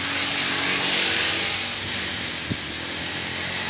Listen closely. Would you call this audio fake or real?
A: real